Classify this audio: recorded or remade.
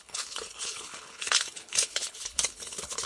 remade